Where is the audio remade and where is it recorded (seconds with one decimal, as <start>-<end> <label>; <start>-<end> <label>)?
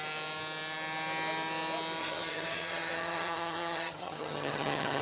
0.0-2.0 recorded; 2.0-5.0 remade